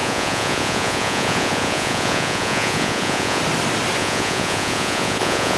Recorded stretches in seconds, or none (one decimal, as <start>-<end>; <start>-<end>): 3.4-4.0

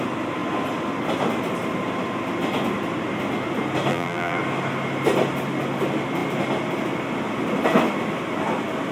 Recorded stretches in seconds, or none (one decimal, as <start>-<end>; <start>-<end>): 0.0-3.9; 4.4-8.9

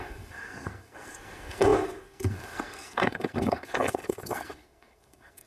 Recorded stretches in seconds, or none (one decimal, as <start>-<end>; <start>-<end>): none

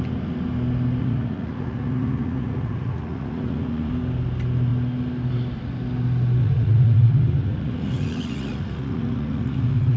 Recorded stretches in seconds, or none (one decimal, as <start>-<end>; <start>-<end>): 0.0-1.0; 3.9-6.4